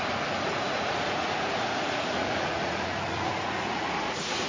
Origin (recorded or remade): remade